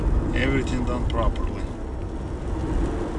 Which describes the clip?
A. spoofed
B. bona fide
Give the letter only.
B